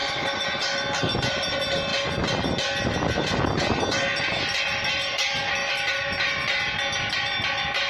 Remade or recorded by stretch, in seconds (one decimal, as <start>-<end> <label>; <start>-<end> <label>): 0.0-7.9 recorded